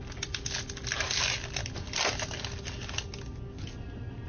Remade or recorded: recorded